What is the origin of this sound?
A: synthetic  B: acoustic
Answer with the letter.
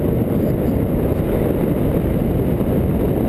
B